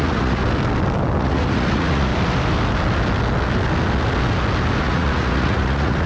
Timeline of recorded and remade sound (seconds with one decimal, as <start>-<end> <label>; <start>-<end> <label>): 0.0-0.4 remade; 0.4-1.2 recorded; 1.2-2.1 remade; 2.1-4.8 recorded; 4.8-6.1 remade